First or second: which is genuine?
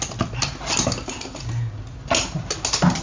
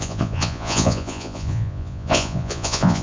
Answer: first